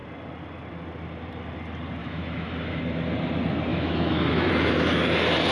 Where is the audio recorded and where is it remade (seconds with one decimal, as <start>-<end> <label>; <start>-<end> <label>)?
0.0-2.0 recorded; 2.0-2.8 remade; 2.8-3.7 recorded; 3.7-4.5 remade; 4.5-5.5 recorded